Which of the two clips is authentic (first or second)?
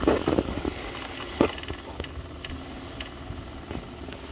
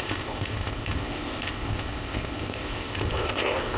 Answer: first